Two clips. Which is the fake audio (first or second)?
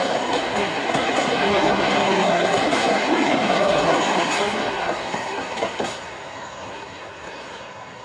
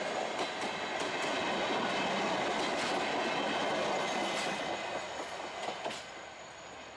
first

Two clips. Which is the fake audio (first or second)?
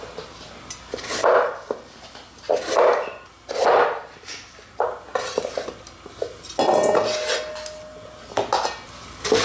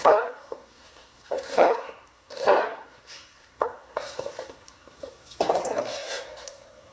second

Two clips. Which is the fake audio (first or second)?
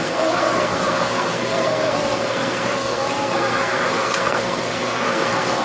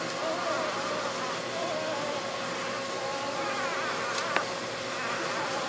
first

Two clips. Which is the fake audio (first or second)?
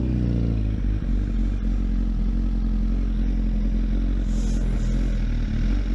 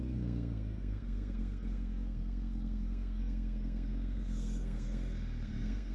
second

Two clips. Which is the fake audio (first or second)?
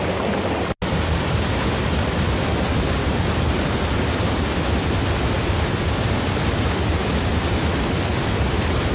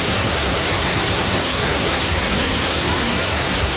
second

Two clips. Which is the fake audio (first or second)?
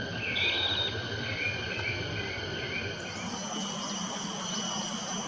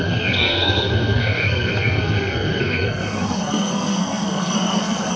second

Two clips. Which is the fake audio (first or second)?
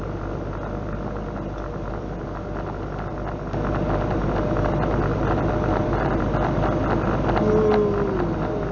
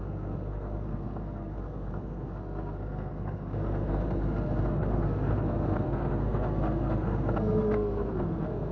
second